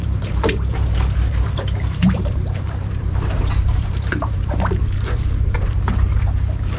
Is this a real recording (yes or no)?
no